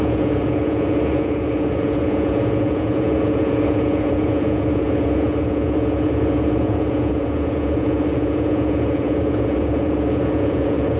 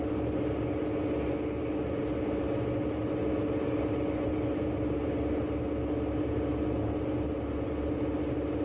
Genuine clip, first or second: second